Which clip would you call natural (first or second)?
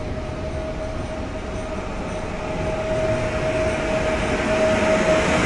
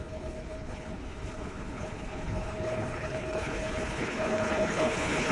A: first